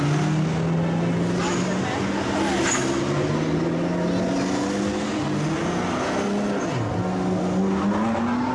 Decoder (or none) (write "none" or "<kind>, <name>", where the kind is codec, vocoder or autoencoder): none